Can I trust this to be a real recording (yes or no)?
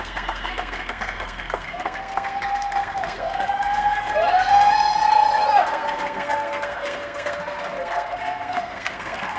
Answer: no